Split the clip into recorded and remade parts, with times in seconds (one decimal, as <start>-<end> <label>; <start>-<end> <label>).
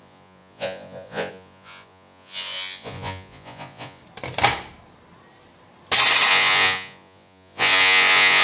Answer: 0.0-4.0 remade; 4.0-6.3 recorded; 6.3-8.4 remade